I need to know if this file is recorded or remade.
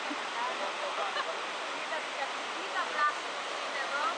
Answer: recorded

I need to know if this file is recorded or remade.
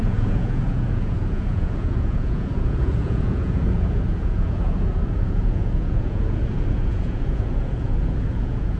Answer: remade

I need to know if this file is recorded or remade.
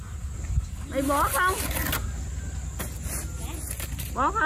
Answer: recorded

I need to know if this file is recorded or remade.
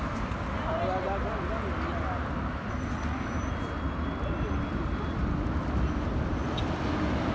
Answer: recorded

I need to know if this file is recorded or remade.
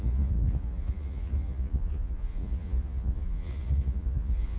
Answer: remade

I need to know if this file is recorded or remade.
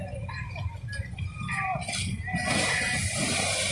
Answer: recorded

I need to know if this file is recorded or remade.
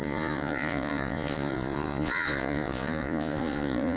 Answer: remade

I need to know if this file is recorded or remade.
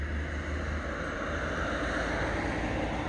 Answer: recorded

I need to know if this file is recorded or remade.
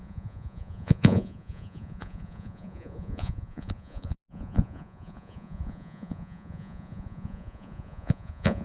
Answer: remade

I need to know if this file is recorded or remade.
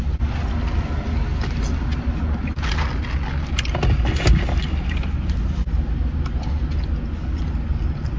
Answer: recorded